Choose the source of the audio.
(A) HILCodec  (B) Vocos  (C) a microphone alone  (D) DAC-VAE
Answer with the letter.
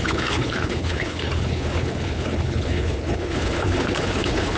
A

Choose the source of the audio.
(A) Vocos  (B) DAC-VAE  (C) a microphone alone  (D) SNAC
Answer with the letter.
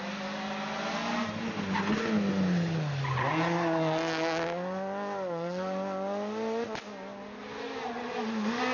C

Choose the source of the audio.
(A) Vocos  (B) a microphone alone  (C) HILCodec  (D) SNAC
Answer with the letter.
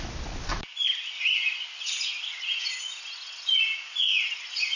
B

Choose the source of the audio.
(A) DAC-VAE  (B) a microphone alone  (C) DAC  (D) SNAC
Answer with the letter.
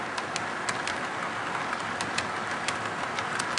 B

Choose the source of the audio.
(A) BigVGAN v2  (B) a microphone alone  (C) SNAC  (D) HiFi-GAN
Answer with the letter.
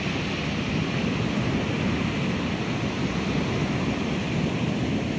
B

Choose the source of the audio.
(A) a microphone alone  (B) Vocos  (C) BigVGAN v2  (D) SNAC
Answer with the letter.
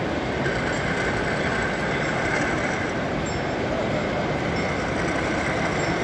A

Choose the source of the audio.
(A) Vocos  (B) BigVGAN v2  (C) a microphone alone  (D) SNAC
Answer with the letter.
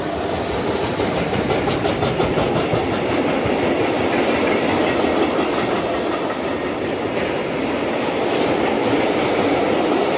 C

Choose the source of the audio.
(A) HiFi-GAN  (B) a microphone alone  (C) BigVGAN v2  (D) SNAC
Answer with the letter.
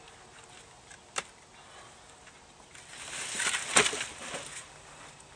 B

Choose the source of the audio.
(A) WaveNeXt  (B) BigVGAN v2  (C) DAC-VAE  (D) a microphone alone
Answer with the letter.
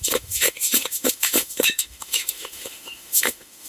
C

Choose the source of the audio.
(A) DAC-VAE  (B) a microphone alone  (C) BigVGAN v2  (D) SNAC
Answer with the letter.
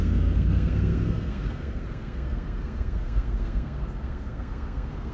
D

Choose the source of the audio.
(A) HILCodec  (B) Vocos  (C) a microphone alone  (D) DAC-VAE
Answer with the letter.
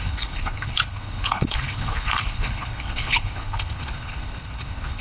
A